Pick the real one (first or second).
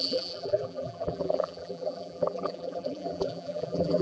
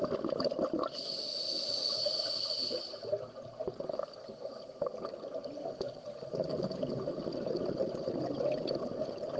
second